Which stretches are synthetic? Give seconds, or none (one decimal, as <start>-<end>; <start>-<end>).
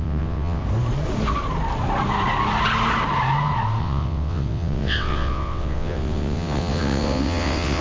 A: 0.0-0.6; 3.8-7.8